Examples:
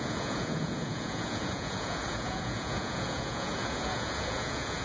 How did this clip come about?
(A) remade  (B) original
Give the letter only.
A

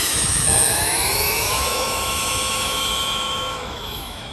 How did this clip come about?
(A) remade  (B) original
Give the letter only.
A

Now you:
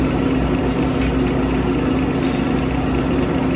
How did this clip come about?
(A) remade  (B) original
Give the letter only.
A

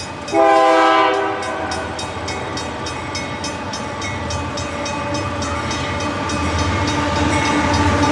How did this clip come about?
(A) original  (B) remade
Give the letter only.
A